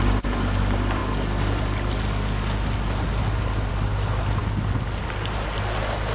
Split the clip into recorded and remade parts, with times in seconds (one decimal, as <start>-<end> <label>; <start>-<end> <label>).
0.0-6.1 recorded